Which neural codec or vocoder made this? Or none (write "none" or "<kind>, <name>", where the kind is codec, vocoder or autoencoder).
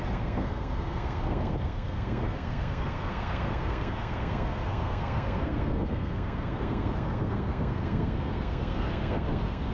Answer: codec, SNAC